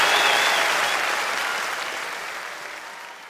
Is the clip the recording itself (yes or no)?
yes